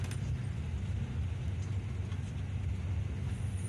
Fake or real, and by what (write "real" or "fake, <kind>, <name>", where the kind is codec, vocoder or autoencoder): real